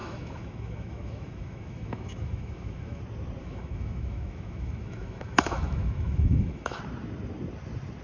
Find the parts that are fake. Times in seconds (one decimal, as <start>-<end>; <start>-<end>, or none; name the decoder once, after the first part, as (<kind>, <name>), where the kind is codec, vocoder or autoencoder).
0.0-3.0 (autoencoder, DAC-VAE); 3.4-6.8